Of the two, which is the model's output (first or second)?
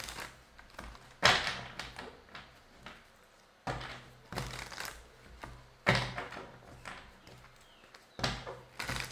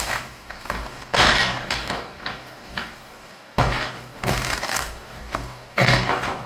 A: second